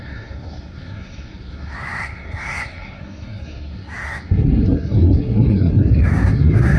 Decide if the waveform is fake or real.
fake